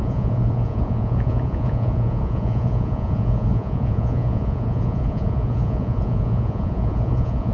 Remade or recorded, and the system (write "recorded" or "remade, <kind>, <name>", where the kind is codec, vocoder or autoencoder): remade, vocoder, Vocos